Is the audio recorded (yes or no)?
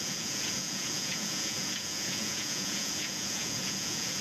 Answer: no